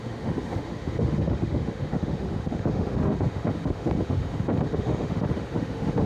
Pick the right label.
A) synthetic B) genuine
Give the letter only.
A